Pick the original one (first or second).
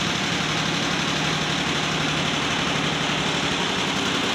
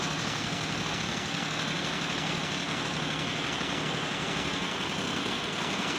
first